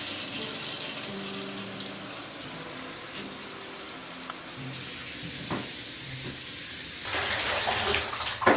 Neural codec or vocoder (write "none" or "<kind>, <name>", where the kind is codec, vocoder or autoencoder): none